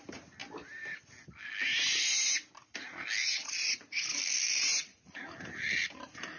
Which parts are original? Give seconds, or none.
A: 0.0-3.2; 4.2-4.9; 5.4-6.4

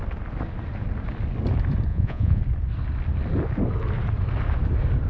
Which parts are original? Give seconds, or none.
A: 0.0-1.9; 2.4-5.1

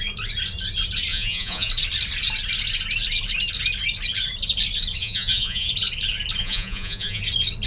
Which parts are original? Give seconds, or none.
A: 0.0-1.1; 1.7-5.0; 5.7-6.4; 7.2-7.7

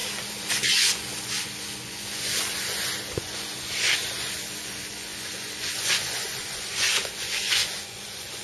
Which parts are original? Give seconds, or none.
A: none